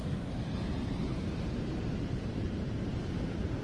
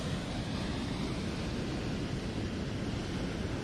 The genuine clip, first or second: second